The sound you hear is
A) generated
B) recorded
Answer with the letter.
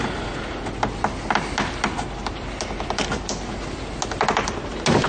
B